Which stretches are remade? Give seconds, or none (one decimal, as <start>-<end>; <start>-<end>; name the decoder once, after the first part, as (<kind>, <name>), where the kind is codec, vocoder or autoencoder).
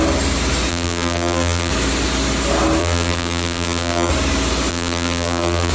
0.7-1.7 (vocoder, BigVGAN v2); 2.8-4.1; 4.7-5.7